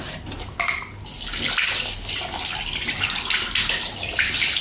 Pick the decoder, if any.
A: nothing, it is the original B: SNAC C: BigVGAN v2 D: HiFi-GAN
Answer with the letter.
A